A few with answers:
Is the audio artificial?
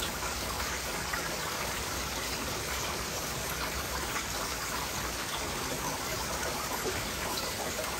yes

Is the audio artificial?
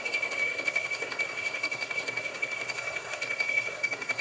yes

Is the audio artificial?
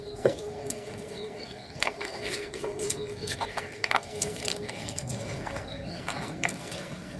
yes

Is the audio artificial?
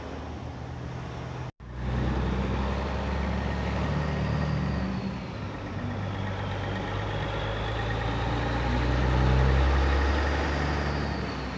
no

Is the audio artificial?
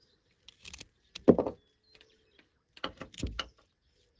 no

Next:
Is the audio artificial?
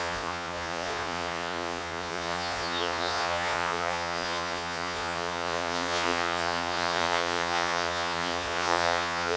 yes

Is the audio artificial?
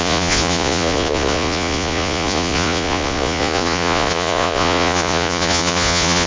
yes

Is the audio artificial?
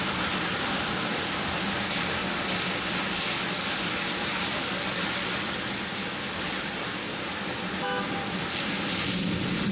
no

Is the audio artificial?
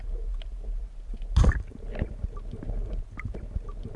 no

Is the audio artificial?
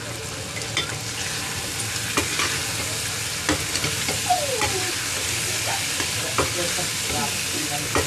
no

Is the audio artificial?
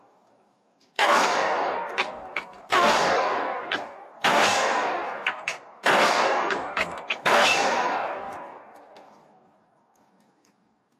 yes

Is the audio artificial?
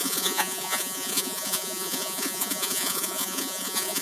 yes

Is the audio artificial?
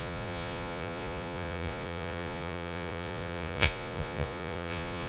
yes